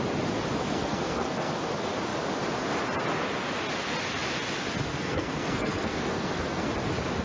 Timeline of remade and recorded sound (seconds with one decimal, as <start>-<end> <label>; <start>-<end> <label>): 0.0-0.6 recorded; 0.6-1.5 remade; 1.5-4.9 recorded; 4.9-6.7 remade; 6.7-7.2 recorded